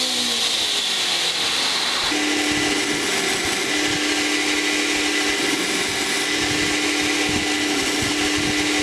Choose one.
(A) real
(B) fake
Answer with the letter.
A